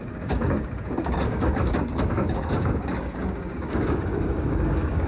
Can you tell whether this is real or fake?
fake